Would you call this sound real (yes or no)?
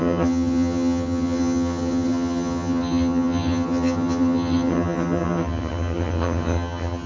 no